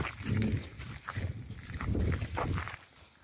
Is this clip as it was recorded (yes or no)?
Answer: yes